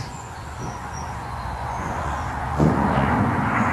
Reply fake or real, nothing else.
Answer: fake